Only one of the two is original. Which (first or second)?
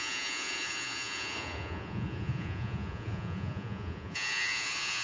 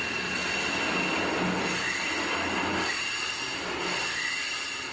second